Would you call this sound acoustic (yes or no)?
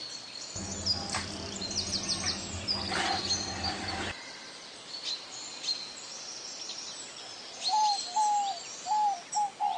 yes